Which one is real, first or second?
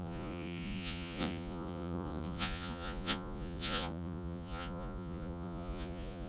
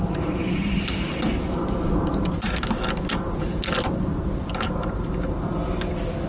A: second